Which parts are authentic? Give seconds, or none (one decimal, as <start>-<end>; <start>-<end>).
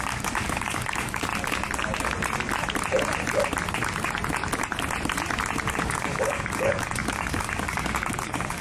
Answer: 1.3-5.7